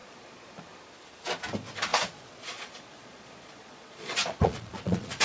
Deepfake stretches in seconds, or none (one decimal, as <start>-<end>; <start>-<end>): 0.0-0.6; 1.9-5.2